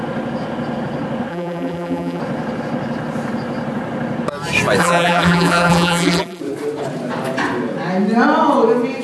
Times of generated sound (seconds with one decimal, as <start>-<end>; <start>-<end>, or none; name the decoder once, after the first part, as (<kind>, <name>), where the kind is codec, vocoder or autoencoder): 1.3-2.2 (vocoder, BigVGAN v2); 4.8-6.4